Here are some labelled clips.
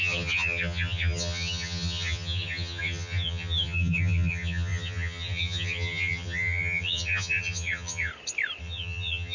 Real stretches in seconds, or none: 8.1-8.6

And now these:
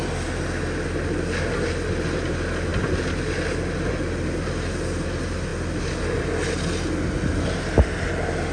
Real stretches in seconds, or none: 0.0-8.5

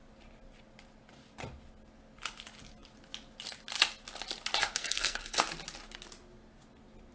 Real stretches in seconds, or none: 0.0-4.6; 5.4-7.1

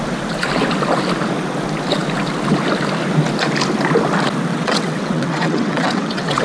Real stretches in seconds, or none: 0.0-4.5

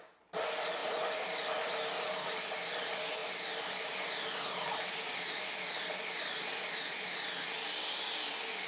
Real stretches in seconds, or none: 0.0-8.7